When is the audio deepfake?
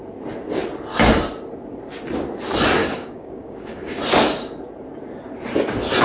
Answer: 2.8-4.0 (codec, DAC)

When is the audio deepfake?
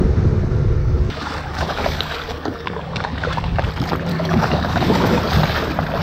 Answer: 0.8-3.6 (codec, DAC); 4.1-5.2